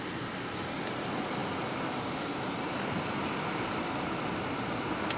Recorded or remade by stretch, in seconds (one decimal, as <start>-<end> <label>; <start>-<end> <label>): 0.0-1.4 recorded; 1.4-2.1 remade; 2.1-5.2 recorded

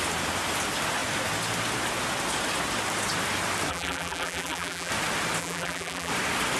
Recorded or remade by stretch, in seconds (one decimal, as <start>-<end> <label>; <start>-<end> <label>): 0.0-3.7 recorded; 3.7-4.9 remade; 4.9-5.4 recorded; 5.4-6.1 remade; 6.1-6.6 recorded

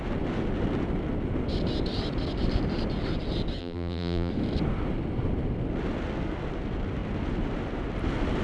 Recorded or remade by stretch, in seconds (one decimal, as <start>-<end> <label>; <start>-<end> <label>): 0.0-3.6 recorded; 3.6-4.3 remade; 4.3-8.4 recorded

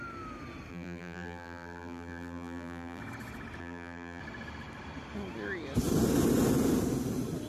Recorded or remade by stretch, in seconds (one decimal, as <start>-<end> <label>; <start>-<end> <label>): 0.0-0.7 recorded; 0.7-3.0 remade; 3.0-3.6 recorded; 3.6-4.2 remade; 4.2-7.5 recorded

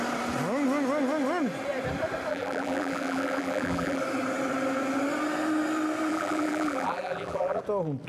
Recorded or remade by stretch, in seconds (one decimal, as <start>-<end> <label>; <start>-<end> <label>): 0.0-2.3 recorded; 2.3-4.0 remade; 4.0-6.1 recorded; 6.1-7.6 remade; 7.6-8.1 recorded

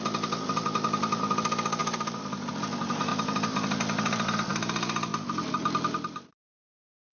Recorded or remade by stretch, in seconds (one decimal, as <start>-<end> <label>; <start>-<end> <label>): 0.0-1.8 recorded; 1.8-2.5 remade; 2.5-5.1 recorded; 5.1-7.1 remade

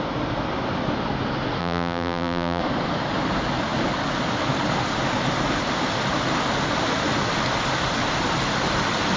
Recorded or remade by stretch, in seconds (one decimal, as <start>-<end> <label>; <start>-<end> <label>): 0.0-1.6 recorded; 1.6-2.6 remade; 2.6-9.2 recorded